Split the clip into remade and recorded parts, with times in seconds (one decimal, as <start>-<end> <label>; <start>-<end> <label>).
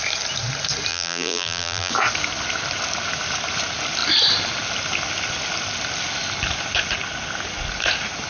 0.0-0.9 recorded; 0.9-1.9 remade; 1.9-8.3 recorded